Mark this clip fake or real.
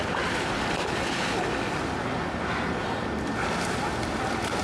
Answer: real